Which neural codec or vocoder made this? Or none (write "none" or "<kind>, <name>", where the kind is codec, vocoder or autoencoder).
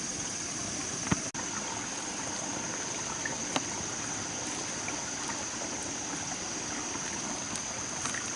none